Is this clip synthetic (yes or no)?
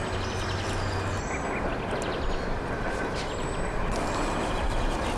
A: no